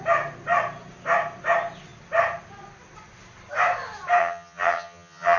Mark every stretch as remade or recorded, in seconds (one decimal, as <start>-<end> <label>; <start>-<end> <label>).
0.0-4.2 recorded; 4.2-5.4 remade